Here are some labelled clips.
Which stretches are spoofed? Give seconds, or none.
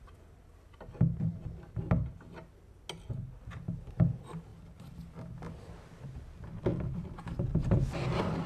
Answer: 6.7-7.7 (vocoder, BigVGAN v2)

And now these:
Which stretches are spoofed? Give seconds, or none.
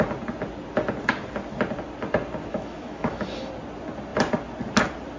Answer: 2.5-3.5 (autoencoder, DAC-VAE)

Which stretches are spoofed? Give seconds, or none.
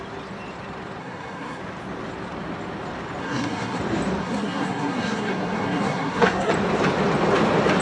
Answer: 1.0-1.6 (codec, SNAC); 3.2-3.8; 4.2-6.5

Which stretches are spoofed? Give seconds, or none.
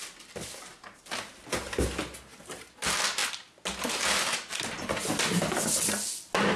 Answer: none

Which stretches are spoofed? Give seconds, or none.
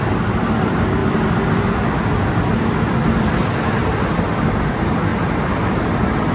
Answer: 0.0-1.0 (vocoder, BigVGAN v2); 2.6-5.1; 5.7-6.3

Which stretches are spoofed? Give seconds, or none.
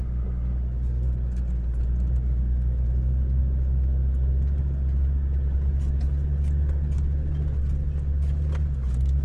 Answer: none